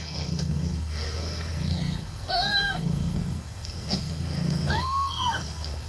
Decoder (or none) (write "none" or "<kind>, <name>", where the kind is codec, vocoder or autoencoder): codec, SNAC